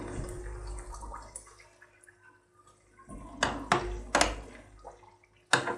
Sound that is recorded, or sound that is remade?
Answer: recorded